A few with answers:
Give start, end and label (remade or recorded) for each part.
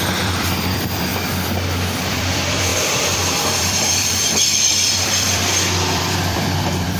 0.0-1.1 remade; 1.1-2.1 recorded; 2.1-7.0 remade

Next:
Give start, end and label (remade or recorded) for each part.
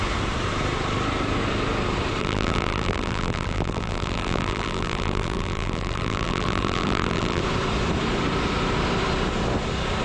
0.0-2.2 recorded; 2.2-7.4 remade; 7.4-10.0 recorded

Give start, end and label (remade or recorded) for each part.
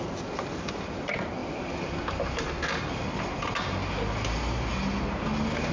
0.0-5.7 recorded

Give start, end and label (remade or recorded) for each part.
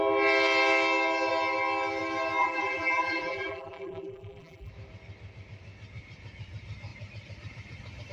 0.0-2.4 recorded; 2.4-4.7 remade; 4.7-8.1 recorded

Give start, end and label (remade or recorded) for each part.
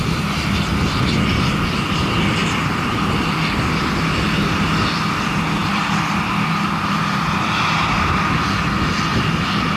0.0-5.6 recorded; 5.6-6.3 remade; 6.3-9.8 recorded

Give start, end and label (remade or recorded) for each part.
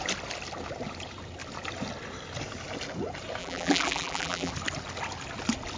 0.0-3.4 recorded; 3.4-4.5 remade; 4.5-5.8 recorded